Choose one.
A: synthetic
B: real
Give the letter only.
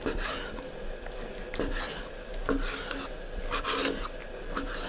B